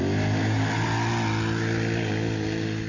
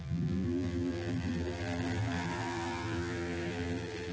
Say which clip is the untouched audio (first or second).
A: first